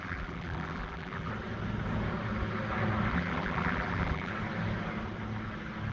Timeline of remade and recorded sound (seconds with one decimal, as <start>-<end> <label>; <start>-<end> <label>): 0.0-1.3 remade; 1.3-3.1 recorded; 3.1-4.3 remade; 4.3-5.9 recorded